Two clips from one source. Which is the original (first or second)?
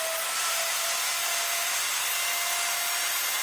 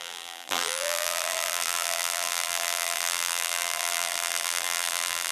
first